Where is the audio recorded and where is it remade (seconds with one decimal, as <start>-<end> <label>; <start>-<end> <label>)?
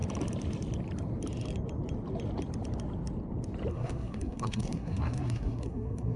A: 0.0-3.7 recorded; 3.7-6.2 remade